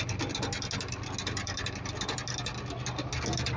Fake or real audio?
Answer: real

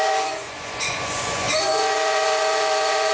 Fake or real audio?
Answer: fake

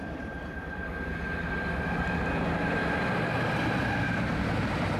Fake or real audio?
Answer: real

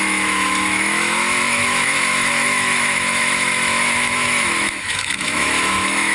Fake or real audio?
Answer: fake